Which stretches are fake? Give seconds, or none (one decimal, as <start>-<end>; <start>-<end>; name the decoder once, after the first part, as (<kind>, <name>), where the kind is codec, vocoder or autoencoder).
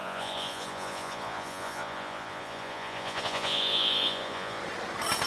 0.0-4.6 (vocoder, Vocos)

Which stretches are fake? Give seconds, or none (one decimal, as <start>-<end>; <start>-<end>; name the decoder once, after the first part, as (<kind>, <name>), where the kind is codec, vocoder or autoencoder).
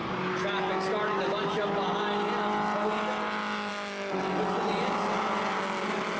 none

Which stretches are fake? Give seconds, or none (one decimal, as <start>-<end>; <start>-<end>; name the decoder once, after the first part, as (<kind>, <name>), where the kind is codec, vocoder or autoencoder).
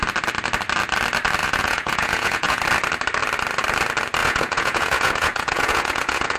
1.4-2.6 (vocoder, Vocos); 4.2-6.4